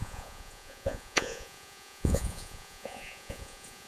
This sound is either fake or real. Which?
fake